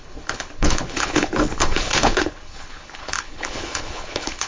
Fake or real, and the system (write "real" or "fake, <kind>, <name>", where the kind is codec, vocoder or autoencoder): fake, codec, HILCodec